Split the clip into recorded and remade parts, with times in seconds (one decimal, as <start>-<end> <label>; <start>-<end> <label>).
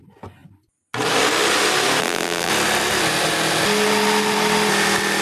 0.0-2.0 recorded; 2.0-2.5 remade; 2.5-5.2 recorded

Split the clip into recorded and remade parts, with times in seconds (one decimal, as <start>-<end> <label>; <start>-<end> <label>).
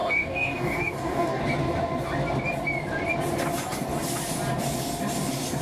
0.0-1.4 remade; 1.4-5.6 recorded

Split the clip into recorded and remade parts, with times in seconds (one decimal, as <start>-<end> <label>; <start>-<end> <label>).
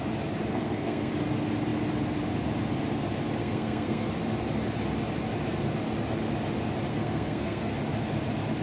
0.0-0.5 recorded; 0.5-1.1 remade; 1.1-3.4 recorded; 3.4-4.1 remade; 4.1-6.9 recorded; 6.9-7.7 remade; 7.7-8.6 recorded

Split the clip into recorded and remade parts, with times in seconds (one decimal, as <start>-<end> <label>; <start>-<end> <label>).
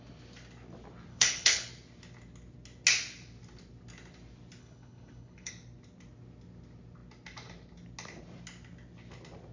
0.0-1.1 recorded; 1.1-1.7 remade; 1.7-4.6 recorded; 4.6-5.5 remade; 5.5-9.5 recorded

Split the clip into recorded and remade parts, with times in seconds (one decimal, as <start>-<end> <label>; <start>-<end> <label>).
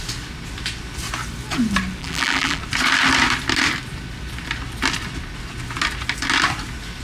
0.0-2.0 recorded; 2.0-2.6 remade; 2.6-7.0 recorded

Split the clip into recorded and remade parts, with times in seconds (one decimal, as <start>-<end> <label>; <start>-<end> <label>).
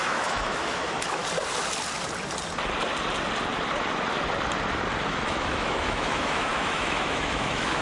0.0-1.2 remade; 1.2-5.1 recorded; 5.1-7.8 remade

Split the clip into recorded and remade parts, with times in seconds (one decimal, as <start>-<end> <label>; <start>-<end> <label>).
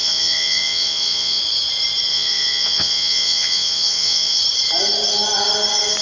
0.0-1.4 remade; 1.4-2.1 recorded; 2.1-4.4 remade; 4.4-6.0 recorded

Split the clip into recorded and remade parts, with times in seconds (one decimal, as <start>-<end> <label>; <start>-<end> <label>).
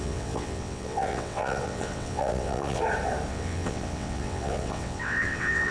0.0-2.8 remade; 2.8-3.3 recorded; 3.3-5.7 remade